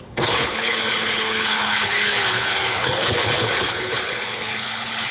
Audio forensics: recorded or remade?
remade